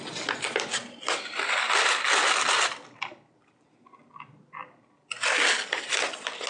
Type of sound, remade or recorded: recorded